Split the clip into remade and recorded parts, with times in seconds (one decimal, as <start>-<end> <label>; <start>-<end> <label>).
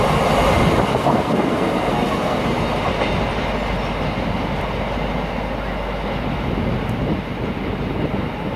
0.0-0.9 recorded; 0.9-2.4 remade; 2.4-8.6 recorded